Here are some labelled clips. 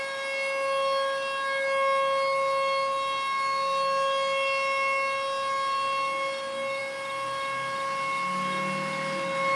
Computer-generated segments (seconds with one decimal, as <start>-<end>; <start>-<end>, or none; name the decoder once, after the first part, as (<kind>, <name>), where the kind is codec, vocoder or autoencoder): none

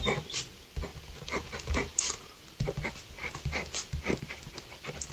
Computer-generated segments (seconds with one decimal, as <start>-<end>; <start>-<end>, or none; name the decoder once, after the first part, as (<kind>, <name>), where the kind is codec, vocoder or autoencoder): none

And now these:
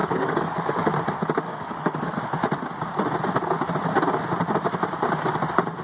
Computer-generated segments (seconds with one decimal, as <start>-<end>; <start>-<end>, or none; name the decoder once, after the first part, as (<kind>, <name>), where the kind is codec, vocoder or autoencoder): 0.0-0.9 (codec, DAC); 1.5-2.2